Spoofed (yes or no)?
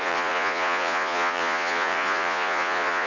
yes